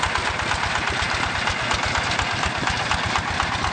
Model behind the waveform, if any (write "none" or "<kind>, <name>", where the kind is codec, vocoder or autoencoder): none